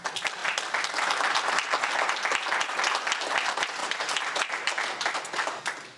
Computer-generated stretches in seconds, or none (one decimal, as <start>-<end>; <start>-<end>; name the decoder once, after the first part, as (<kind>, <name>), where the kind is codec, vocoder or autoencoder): 3.8-5.6 (vocoder, BigVGAN v2)